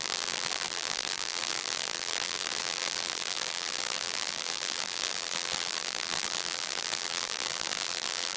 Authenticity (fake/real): fake